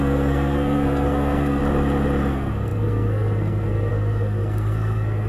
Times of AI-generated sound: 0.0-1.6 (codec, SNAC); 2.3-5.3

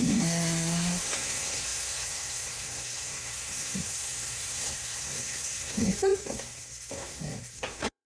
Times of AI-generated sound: 0.0-8.1 (codec, SNAC)

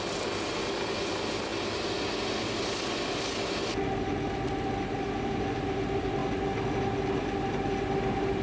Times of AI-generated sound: none

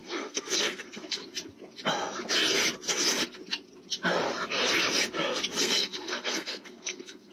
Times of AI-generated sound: 0.0-1.2 (codec, SNAC); 5.6-7.3

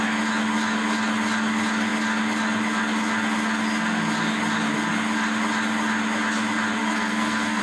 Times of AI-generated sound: 6.8-7.6 (codec, SNAC)